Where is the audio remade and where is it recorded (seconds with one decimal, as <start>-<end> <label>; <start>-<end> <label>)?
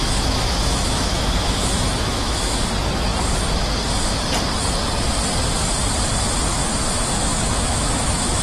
0.0-2.6 remade; 2.6-6.6 recorded; 6.6-8.4 remade